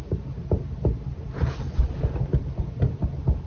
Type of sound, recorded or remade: recorded